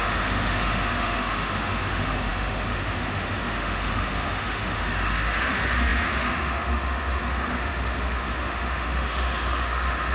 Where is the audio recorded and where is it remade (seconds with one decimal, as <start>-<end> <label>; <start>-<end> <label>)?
0.0-10.1 remade